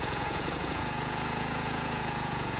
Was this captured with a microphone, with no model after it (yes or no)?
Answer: no